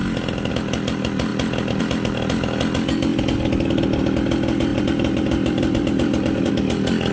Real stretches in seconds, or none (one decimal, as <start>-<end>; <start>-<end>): 0.0-4.7; 6.5-7.1